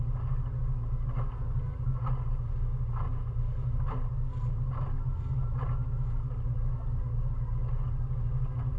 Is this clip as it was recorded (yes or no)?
yes